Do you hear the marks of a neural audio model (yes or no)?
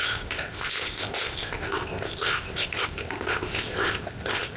yes